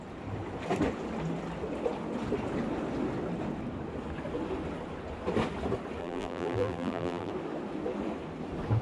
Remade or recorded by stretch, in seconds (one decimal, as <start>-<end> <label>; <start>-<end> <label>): 0.0-6.0 recorded; 6.0-7.3 remade; 7.3-8.8 recorded